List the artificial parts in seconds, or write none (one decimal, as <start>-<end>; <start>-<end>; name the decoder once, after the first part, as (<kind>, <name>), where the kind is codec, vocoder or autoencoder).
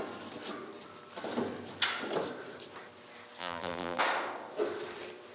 3.4-4.0 (vocoder, BigVGAN v2)